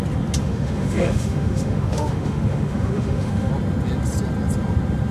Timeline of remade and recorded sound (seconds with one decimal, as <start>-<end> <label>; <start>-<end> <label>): 0.0-0.4 recorded; 0.4-3.5 remade; 3.5-5.1 recorded